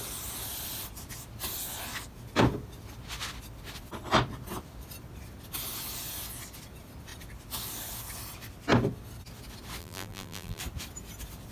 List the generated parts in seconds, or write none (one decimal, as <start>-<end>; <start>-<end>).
9.8-10.6